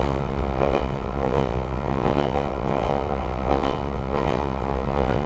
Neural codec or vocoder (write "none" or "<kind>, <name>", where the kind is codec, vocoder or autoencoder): vocoder, WaveNeXt